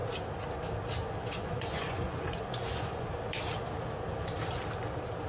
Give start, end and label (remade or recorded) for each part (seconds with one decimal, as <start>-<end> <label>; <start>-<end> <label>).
0.0-1.0 recorded; 1.0-3.1 remade; 3.1-5.3 recorded